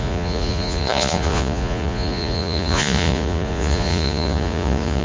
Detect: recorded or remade remade